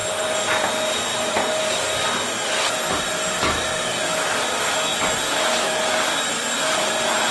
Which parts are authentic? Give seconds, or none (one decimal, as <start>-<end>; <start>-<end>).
0.0-7.3